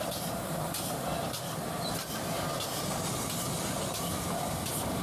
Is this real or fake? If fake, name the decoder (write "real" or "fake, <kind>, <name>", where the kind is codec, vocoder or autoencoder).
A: real